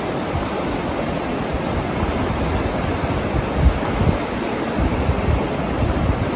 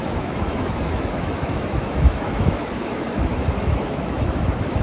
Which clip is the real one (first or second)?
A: first